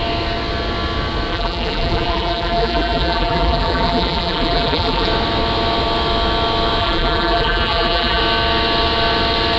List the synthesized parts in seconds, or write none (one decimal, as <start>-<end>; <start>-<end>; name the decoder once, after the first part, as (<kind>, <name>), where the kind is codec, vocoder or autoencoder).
1.3-5.1 (vocoder, BigVGAN v2); 6.8-8.2